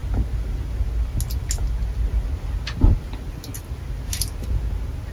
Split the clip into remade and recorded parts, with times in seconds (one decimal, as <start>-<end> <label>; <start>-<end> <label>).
0.0-5.1 recorded